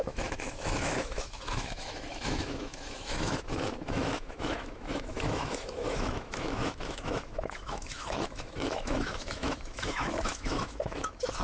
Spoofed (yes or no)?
yes